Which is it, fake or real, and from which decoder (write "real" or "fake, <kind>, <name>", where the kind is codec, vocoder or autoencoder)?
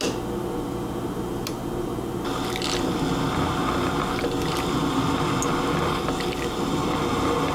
real